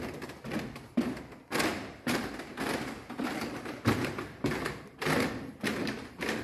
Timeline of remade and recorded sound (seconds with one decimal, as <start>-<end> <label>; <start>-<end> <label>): 0.0-1.7 recorded; 1.7-2.3 remade; 2.3-3.0 recorded; 3.0-5.5 remade; 5.5-6.4 recorded